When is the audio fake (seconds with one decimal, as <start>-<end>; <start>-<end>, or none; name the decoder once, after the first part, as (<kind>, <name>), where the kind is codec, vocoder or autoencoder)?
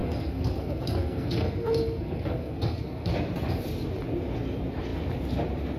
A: 0.0-3.1 (codec, SNAC)